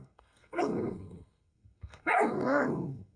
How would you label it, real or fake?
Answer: fake